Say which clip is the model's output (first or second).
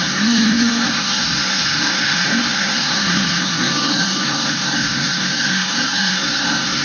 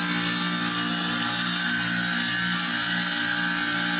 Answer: first